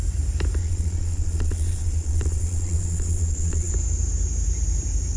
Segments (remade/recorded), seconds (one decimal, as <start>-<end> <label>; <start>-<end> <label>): 0.0-0.6 recorded; 0.6-3.7 remade; 3.7-5.2 recorded